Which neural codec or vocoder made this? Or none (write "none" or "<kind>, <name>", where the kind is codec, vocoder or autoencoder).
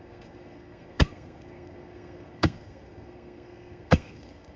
codec, SNAC